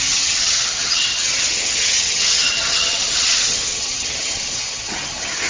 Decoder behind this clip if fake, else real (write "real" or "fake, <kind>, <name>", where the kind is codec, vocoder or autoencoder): fake, vocoder, HiFi-GAN